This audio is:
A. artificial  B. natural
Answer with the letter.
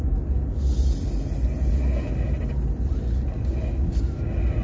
B